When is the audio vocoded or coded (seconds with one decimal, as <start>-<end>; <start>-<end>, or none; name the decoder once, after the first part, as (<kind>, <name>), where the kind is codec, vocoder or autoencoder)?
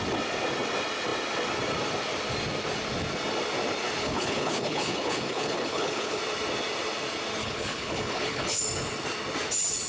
4.0-6.2 (codec, HILCodec); 7.4-8.6